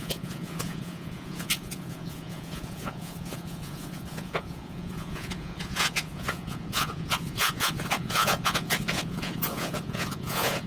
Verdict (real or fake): fake